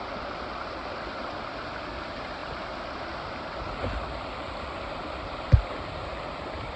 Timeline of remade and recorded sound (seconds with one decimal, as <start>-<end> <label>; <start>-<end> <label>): 0.0-6.8 recorded